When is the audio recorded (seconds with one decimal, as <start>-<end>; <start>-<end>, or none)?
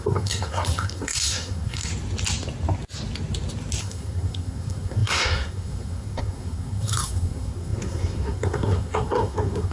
1.9-3.8